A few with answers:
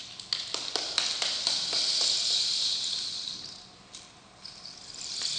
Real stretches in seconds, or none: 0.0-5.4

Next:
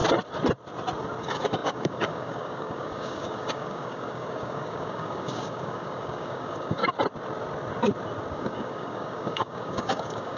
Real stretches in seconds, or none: 0.0-1.2; 6.8-8.3